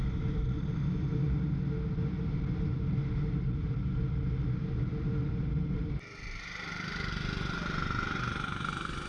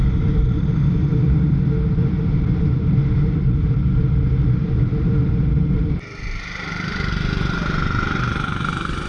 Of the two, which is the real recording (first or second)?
first